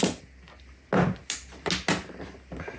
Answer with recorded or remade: recorded